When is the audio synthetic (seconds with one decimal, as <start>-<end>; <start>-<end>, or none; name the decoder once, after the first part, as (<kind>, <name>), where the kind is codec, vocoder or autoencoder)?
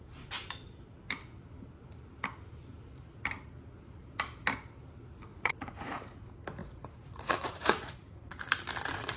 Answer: 5.3-6.0 (vocoder, Vocos); 6.6-8.4